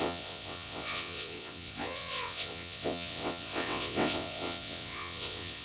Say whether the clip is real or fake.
fake